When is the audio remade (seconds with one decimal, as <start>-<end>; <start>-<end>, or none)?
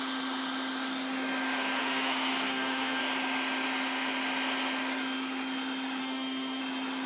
1.8-3.0; 6.0-6.6